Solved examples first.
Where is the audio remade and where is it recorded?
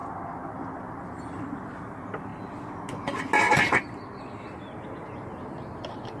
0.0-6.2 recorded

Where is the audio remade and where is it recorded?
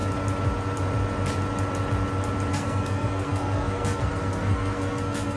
0.0-2.5 recorded; 2.5-5.4 remade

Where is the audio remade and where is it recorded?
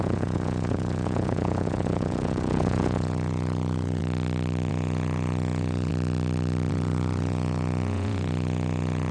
0.0-4.0 remade; 4.0-4.7 recorded; 4.7-5.9 remade; 5.9-6.7 recorded; 6.7-9.1 remade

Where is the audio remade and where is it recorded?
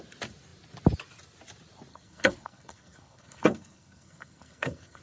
0.0-1.9 recorded; 1.9-5.0 remade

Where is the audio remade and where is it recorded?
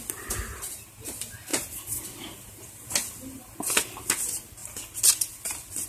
0.0-5.9 recorded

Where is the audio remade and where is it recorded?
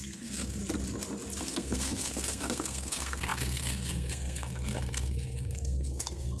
0.0-0.6 remade; 0.6-1.4 recorded; 1.4-6.4 remade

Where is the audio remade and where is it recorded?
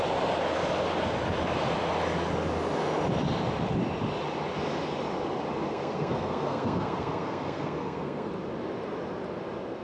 0.0-5.7 recorded; 5.7-8.3 remade; 8.3-9.8 recorded